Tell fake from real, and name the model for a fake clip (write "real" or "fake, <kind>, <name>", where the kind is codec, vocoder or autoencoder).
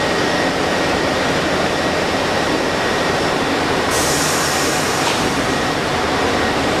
fake, vocoder, BigVGAN v2